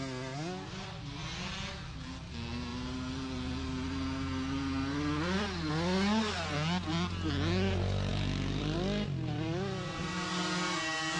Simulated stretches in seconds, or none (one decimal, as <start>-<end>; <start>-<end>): none